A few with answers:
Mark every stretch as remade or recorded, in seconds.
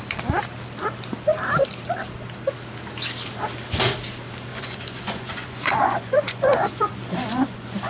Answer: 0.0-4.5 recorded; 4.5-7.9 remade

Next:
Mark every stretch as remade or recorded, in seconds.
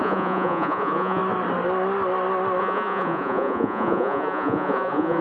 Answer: 0.0-1.2 remade; 1.2-2.6 recorded; 2.6-5.2 remade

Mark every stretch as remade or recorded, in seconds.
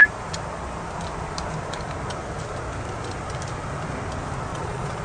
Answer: 0.0-4.5 recorded; 4.5-5.0 remade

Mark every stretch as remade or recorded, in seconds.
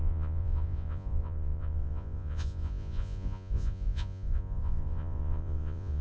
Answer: 0.0-6.0 remade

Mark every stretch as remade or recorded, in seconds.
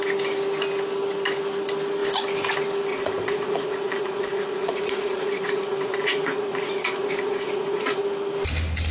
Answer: 0.0-2.9 recorded; 2.9-8.0 remade; 8.0-8.9 recorded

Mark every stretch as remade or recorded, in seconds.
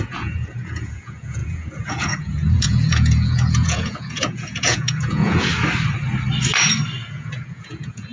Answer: 0.0-5.5 remade; 5.5-7.0 recorded; 7.0-8.1 remade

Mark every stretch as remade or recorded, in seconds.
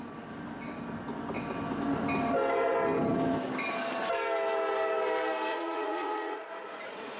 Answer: 0.0-5.5 recorded; 5.5-7.2 remade